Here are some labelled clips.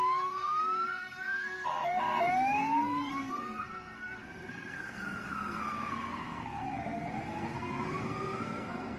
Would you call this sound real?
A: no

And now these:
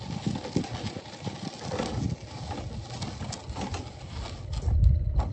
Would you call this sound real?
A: yes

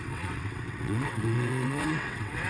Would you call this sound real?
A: no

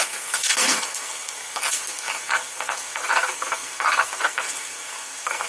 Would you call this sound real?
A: no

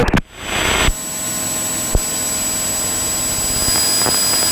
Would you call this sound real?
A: yes